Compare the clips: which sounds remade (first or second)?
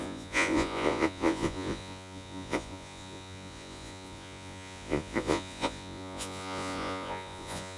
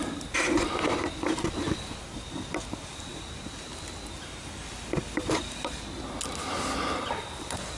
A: first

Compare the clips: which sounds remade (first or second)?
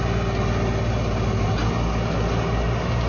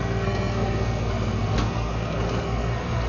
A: second